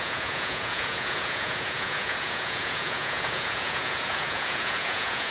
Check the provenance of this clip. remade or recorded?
remade